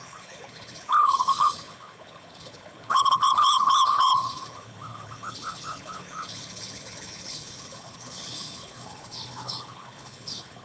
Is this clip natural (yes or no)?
no